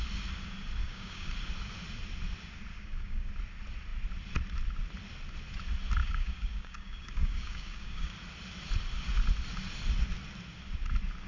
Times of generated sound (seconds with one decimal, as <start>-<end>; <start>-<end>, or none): 0.8-1.3; 2.7-3.3; 6.0-8.1